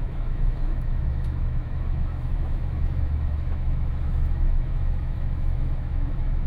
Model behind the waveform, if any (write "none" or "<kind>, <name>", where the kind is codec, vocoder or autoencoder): autoencoder, DAC-VAE